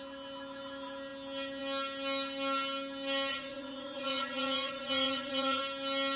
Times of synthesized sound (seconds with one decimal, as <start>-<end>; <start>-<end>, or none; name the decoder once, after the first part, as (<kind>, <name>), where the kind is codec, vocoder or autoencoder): 3.3-5.6 (vocoder, Vocos)